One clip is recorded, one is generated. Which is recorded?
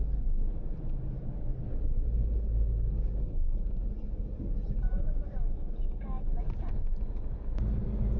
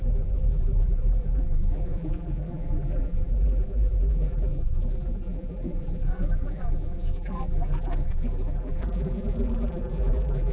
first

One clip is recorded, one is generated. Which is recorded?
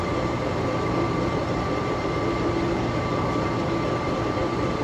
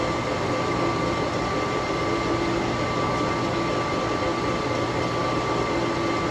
second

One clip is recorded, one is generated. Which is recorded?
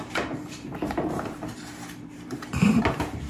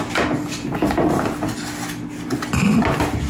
second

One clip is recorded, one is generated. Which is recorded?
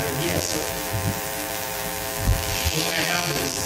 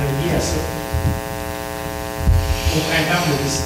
second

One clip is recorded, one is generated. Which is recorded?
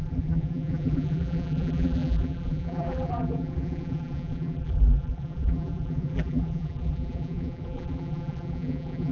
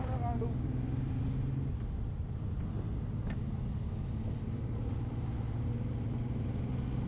second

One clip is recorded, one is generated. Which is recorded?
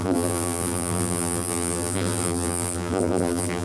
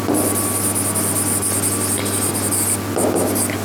second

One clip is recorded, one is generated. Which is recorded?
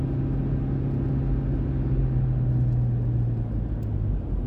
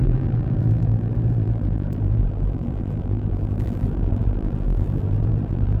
first